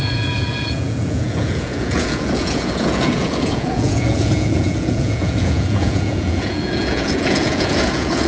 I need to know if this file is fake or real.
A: fake